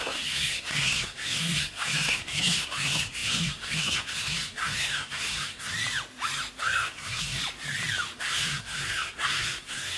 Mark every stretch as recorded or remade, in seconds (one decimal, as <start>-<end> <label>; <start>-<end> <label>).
0.0-5.7 remade; 5.7-6.6 recorded; 6.6-7.4 remade; 7.4-8.2 recorded; 8.2-10.0 remade